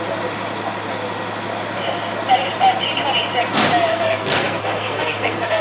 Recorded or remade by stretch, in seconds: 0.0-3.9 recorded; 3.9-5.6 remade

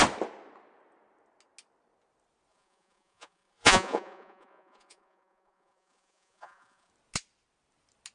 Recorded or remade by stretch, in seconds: 0.0-2.5 recorded; 2.5-6.9 remade; 6.9-8.1 recorded

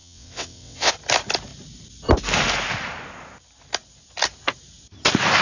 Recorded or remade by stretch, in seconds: 0.0-0.9 remade; 0.9-5.4 recorded

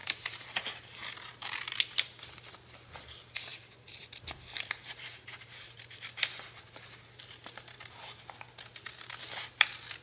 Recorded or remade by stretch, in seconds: 0.0-1.3 remade; 1.3-3.5 recorded; 3.5-8.3 remade; 8.3-10.0 recorded